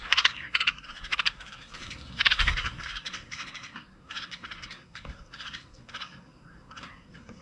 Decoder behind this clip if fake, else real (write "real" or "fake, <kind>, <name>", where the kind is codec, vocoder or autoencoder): fake, codec, SNAC